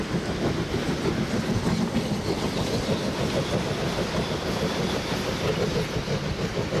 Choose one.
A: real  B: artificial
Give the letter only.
A